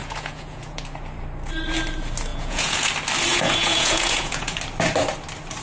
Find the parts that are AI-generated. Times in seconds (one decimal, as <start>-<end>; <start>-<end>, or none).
0.0-0.8; 2.3-2.9; 3.3-4.6